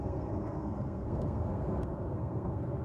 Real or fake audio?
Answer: fake